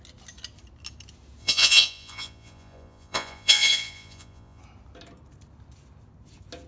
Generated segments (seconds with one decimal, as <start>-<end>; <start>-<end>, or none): 1.4-4.6